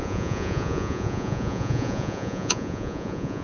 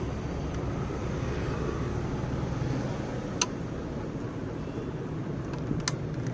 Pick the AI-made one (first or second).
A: first